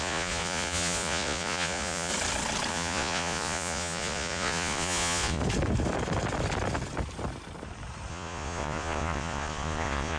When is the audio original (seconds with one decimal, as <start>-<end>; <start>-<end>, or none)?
2.1-2.7; 5.4-8.1